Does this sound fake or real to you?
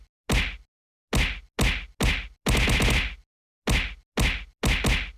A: real